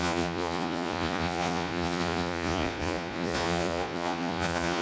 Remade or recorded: remade